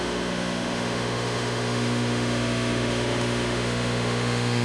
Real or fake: fake